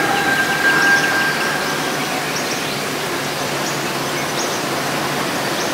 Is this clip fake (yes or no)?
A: no